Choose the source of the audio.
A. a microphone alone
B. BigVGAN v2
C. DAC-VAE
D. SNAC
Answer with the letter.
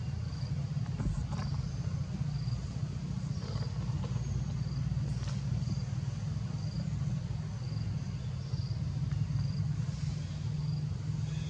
A